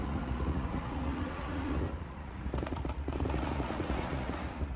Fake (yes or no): yes